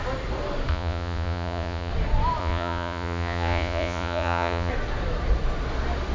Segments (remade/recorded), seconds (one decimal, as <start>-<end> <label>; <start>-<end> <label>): 0.0-0.7 recorded; 0.7-1.9 remade; 1.9-2.4 recorded; 2.4-4.7 remade; 4.7-6.1 recorded